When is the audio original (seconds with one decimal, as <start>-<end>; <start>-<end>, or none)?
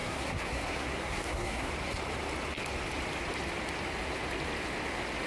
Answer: 1.7-5.3